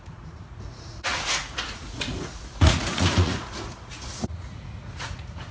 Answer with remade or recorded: remade